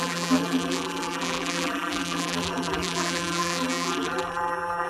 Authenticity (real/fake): fake